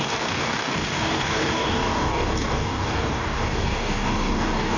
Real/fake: fake